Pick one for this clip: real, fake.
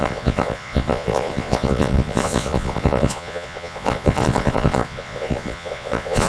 fake